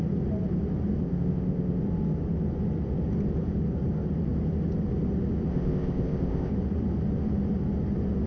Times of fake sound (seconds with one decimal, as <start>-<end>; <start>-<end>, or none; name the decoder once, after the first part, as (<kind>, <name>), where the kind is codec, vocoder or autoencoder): 1.0-1.8 (codec, ZipCodec); 5.5-6.5